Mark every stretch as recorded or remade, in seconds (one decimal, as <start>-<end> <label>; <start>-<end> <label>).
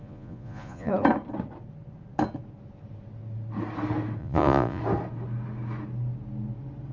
0.0-0.9 remade; 0.9-4.2 recorded; 4.2-4.8 remade; 4.8-6.9 recorded